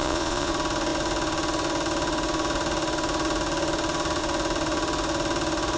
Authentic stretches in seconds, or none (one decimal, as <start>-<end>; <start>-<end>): 0.5-5.8